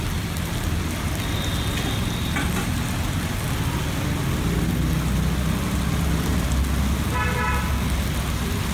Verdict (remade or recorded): recorded